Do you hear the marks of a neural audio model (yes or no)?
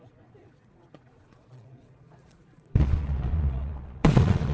yes